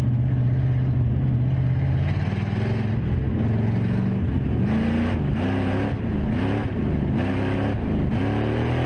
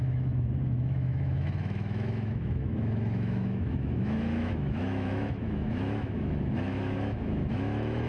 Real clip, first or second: first